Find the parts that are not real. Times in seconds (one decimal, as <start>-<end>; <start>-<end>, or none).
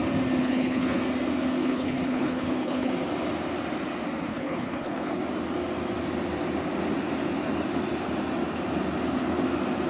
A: 0.4-1.0; 1.6-2.9; 4.3-5.2